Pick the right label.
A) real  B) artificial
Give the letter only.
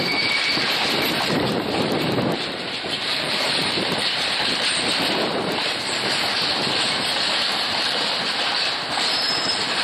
B